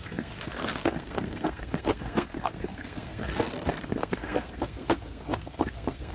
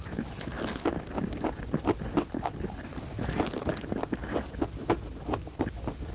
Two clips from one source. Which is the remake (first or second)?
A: first